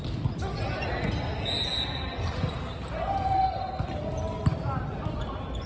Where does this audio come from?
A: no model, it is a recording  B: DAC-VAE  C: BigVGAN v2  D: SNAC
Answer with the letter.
A